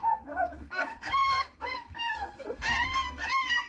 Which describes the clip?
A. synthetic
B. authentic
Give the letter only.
A